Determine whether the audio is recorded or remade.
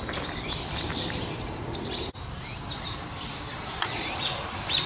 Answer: recorded